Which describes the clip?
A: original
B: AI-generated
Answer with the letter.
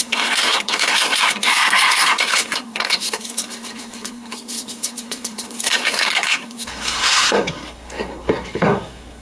B